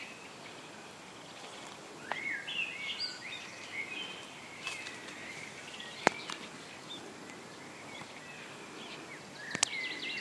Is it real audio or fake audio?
real